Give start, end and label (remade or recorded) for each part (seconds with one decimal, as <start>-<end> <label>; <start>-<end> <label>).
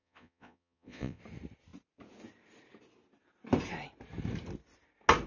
0.0-1.2 remade; 1.2-5.3 recorded